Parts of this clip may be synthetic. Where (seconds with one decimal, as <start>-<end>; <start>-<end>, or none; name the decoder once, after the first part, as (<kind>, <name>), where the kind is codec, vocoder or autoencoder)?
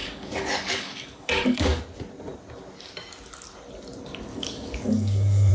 0.0-1.8 (codec, DAC); 4.3-5.5